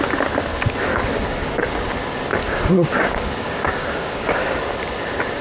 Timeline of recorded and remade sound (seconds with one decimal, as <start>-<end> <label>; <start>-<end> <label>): 0.0-0.9 recorded; 0.9-1.7 remade; 1.7-2.4 recorded; 2.4-4.4 remade; 4.4-5.4 recorded